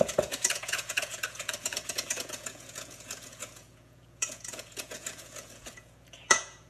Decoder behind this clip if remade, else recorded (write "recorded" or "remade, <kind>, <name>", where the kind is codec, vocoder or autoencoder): remade, vocoder, Vocos